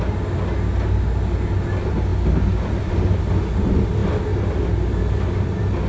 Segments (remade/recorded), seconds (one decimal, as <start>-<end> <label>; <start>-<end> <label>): 0.0-5.9 recorded